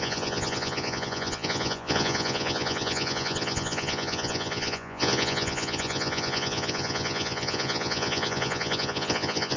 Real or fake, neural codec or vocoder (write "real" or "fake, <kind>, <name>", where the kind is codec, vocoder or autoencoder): fake, vocoder, Vocos